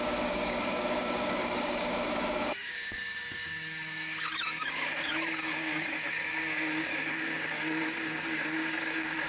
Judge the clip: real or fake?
fake